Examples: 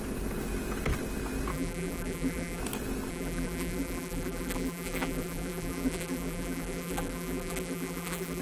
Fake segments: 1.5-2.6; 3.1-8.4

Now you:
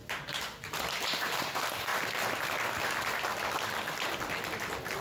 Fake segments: 0.0-1.9

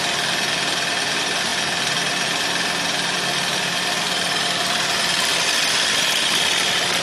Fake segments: none

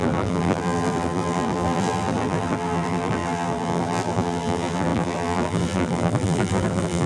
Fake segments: 0.0-7.1